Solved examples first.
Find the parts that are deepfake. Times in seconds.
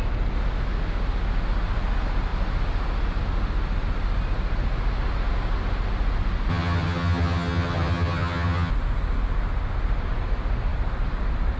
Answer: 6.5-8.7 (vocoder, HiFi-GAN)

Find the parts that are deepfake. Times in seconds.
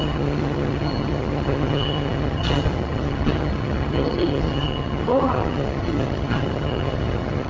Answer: 0.0-7.5 (vocoder, HiFi-GAN)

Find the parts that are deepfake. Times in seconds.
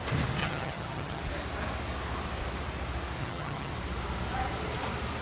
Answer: 0.4-1.2 (vocoder, HiFi-GAN); 3.2-3.7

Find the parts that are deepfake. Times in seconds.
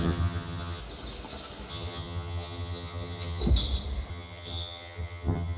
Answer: 0.0-0.8 (vocoder, HiFi-GAN); 1.7-3.4; 4.1-5.6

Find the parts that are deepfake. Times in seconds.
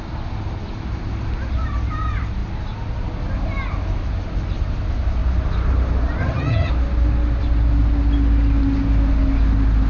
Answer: 6.2-6.7 (vocoder, HiFi-GAN)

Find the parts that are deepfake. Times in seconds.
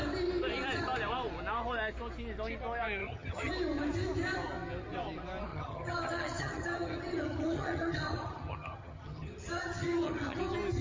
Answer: 3.0-3.5 (vocoder, HiFi-GAN); 5.5-10.4